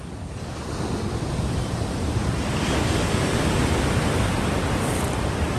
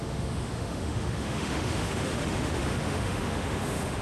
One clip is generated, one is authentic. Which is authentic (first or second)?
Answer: first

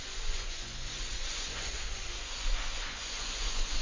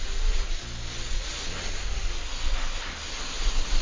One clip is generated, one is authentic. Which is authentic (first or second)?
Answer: second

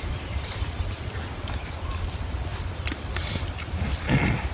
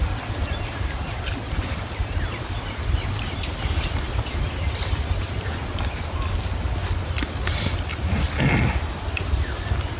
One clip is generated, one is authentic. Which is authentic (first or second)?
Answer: second